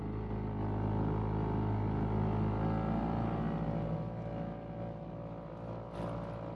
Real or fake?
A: real